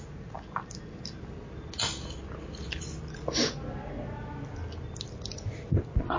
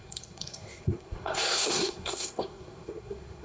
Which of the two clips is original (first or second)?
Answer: first